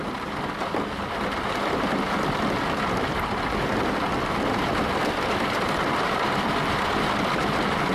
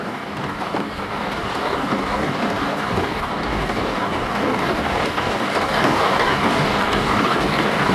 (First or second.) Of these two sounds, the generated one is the second